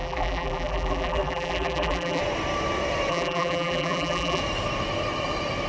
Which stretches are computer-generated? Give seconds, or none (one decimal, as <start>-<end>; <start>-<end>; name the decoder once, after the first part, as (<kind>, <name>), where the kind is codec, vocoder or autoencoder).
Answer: 0.0-2.2 (vocoder, BigVGAN v2); 3.1-4.4